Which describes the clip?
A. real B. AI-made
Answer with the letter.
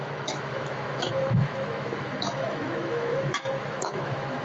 B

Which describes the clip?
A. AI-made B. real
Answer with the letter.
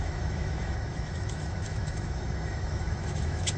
A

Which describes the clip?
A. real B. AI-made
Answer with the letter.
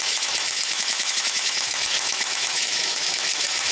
B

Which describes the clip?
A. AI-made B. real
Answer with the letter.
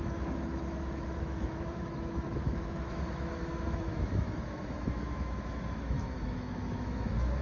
A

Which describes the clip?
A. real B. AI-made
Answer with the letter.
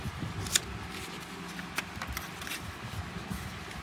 A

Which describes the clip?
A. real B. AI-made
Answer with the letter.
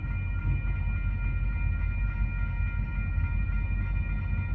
A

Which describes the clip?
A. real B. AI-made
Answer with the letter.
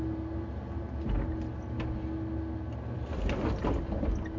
A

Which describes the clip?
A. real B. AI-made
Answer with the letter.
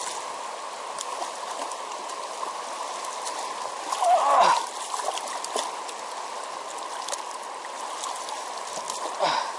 A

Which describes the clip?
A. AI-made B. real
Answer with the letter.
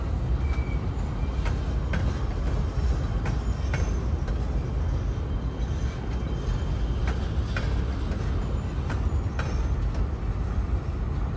B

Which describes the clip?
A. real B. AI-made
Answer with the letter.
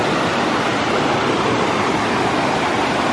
A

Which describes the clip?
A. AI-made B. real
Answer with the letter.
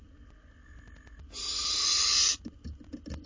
B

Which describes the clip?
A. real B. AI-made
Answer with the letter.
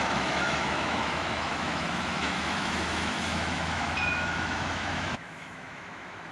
B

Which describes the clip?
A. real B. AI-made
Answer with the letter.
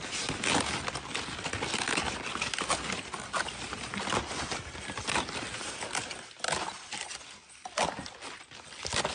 A